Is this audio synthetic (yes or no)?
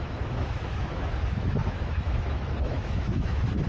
yes